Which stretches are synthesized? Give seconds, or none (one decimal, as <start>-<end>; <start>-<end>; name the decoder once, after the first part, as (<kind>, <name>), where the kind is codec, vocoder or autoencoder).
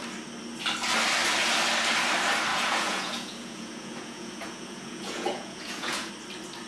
2.5-6.1 (vocoder, Vocos)